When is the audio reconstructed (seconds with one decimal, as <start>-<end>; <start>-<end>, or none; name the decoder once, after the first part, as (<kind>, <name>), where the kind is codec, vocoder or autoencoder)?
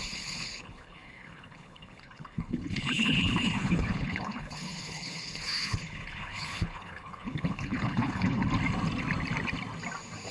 0.0-8.4 (codec, HILCodec)